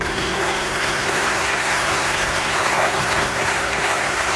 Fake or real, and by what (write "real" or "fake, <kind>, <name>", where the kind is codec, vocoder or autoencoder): fake, codec, SNAC